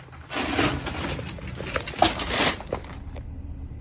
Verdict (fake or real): real